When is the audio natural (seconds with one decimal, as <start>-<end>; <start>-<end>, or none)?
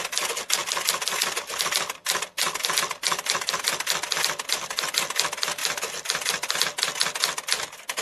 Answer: 0.0-0.6; 4.9-5.6; 6.6-8.0